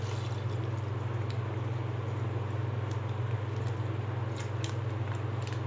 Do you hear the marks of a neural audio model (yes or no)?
no